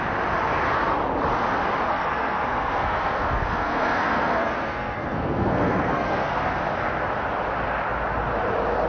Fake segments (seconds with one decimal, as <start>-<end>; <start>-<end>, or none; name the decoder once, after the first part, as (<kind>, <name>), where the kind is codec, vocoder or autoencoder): 1.9-6.6 (codec, SNAC)